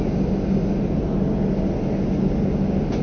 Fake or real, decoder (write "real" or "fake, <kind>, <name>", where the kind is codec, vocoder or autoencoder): real